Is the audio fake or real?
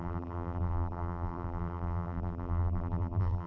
fake